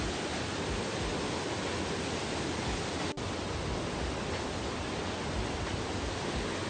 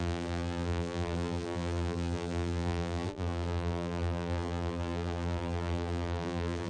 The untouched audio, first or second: first